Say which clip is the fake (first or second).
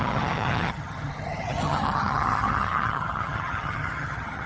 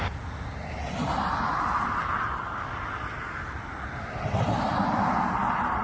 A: first